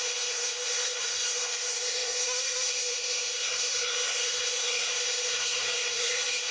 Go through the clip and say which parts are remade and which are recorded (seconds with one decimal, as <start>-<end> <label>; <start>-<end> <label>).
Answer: 0.0-6.5 remade